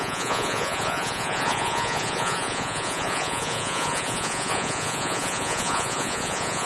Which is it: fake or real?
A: fake